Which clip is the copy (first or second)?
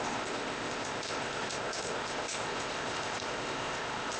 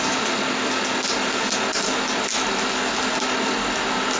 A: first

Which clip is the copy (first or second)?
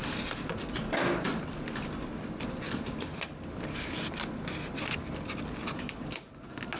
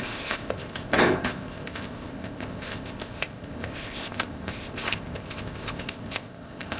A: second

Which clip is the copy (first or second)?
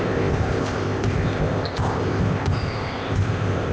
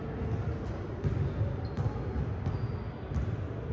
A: first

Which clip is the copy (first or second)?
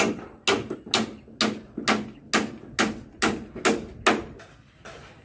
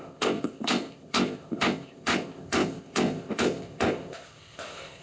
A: second